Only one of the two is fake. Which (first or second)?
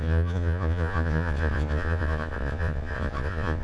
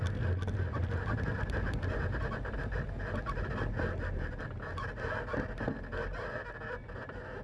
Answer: first